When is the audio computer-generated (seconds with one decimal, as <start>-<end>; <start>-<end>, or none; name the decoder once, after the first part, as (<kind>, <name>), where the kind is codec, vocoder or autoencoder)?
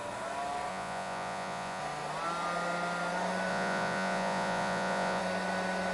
0.7-1.8 (vocoder, Vocos); 3.5-5.2